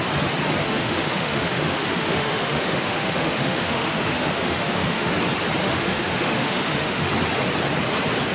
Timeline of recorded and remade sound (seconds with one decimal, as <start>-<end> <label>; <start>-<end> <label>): 0.0-0.6 recorded; 0.6-5.1 remade; 5.1-5.6 recorded; 5.6-7.1 remade; 7.1-8.3 recorded